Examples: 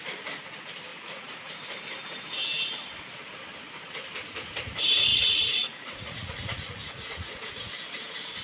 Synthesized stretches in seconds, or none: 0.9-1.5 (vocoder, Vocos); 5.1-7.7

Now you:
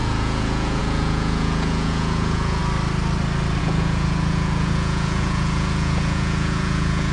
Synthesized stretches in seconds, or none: 0.0-2.6 (vocoder, Vocos); 3.6-7.1

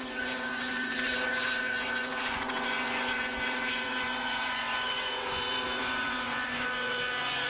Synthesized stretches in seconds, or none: 0.0-7.5 (vocoder, Vocos)

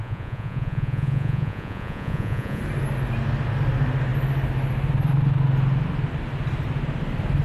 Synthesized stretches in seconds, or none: 0.0-2.6 (vocoder, Vocos)